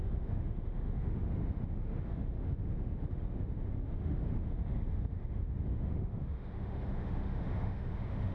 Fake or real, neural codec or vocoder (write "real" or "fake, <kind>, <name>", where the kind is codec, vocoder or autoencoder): fake, autoencoder, DAC-VAE